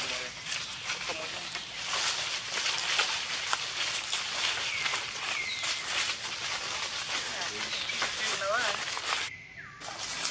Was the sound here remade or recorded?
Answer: recorded